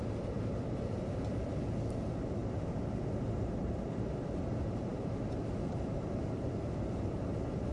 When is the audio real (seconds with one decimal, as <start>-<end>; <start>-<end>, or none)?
none